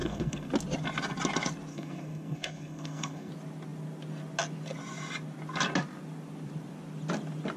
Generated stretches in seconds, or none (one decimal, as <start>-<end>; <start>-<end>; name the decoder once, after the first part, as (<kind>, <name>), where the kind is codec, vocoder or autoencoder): 0.0-0.5 (codec, SNAC); 1.7-3.3